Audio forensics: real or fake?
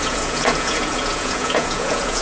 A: fake